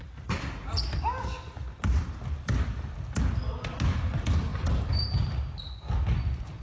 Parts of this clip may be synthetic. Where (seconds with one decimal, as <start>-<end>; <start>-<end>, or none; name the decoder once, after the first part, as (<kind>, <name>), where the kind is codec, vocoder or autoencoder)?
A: 4.5-5.0 (vocoder, BigVGAN v2)